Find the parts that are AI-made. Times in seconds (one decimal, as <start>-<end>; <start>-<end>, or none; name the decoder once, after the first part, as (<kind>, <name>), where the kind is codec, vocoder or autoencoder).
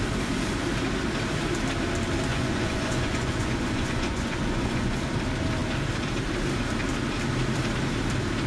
2.3-5.0 (vocoder, Vocos)